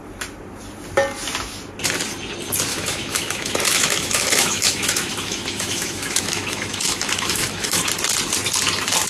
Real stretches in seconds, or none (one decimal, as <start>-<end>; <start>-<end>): 0.0-2.7; 7.8-9.1